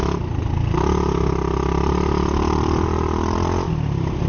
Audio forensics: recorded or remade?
recorded